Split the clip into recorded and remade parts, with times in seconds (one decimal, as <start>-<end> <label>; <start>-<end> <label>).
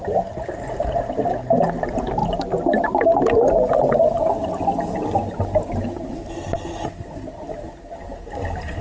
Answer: 0.0-8.8 recorded